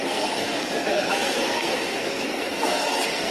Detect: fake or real fake